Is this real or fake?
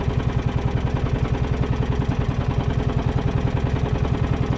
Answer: real